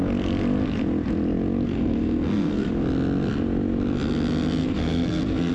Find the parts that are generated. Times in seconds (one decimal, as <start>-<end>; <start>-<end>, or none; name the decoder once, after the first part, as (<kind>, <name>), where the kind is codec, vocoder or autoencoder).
1.7-2.7 (codec, SNAC); 4.6-5.5